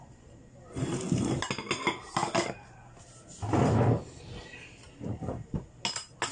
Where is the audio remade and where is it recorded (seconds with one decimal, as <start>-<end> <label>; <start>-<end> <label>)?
0.0-6.3 recorded